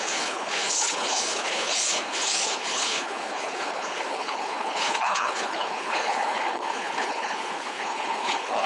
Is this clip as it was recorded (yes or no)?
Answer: no